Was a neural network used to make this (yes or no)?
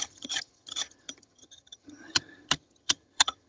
yes